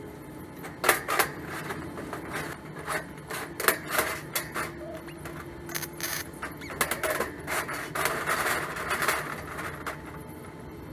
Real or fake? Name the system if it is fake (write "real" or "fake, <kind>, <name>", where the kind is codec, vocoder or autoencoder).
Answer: real